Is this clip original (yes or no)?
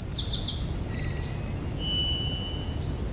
yes